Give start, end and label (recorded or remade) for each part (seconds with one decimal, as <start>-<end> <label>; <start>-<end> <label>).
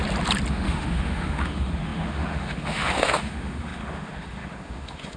0.0-0.5 recorded; 0.5-5.2 remade